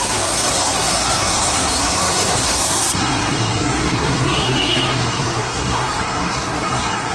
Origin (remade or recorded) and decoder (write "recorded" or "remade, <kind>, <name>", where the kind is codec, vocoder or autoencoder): remade, codec, SNAC